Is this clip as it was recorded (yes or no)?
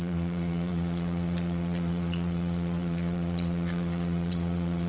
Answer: no